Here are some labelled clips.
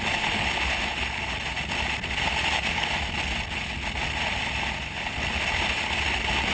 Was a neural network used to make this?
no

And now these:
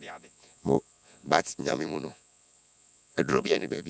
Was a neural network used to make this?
yes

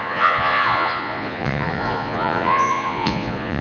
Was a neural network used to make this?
yes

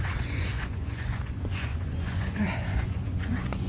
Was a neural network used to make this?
yes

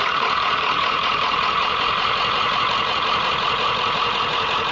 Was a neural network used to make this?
yes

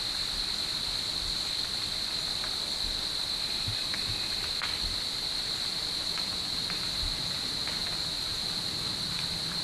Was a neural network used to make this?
no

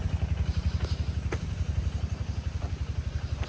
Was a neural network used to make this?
no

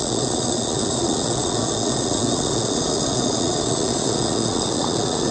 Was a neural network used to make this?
yes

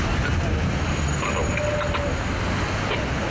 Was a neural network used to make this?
no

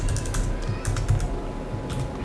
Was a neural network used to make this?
no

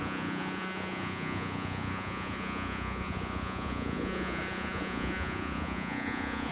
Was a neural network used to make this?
yes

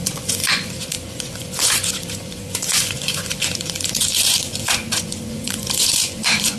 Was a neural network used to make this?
yes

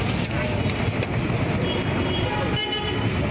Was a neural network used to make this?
no